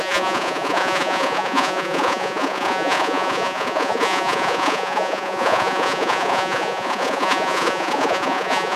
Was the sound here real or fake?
fake